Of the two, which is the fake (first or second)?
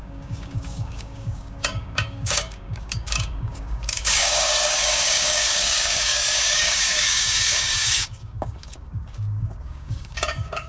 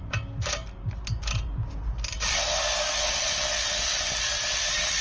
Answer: first